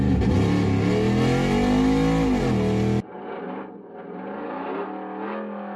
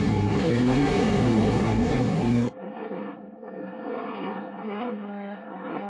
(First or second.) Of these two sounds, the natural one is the first